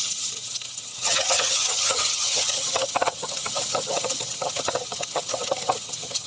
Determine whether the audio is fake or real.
fake